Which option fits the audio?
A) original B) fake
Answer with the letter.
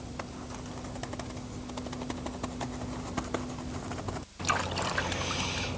A